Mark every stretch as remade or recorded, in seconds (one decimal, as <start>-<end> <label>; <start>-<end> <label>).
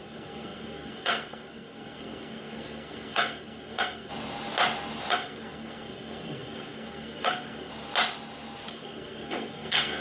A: 0.0-4.1 remade; 4.1-5.1 recorded; 5.1-7.7 remade; 7.7-8.7 recorded; 8.7-10.0 remade